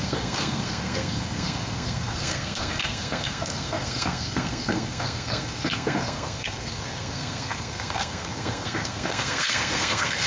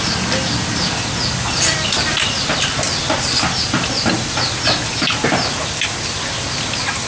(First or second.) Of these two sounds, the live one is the second